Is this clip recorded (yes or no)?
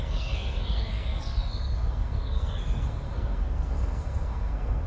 no